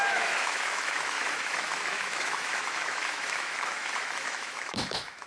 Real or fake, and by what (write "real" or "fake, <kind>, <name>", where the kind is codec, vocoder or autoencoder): fake, autoencoder, DAC-VAE